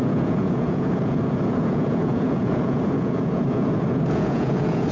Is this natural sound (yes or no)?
no